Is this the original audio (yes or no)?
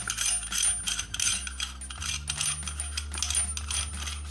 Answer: yes